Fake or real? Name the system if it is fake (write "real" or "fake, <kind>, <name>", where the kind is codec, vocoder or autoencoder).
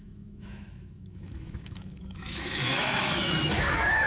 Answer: fake, autoencoder, DAC-VAE